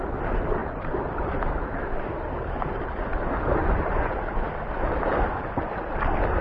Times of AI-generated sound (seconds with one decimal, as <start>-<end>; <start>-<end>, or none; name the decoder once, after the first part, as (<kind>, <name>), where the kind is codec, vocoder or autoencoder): 3.6-4.2 (vocoder, Vocos)